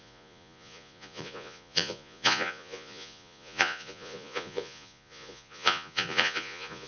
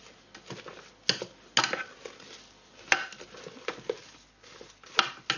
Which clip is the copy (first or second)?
first